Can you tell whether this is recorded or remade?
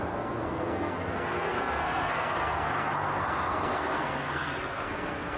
remade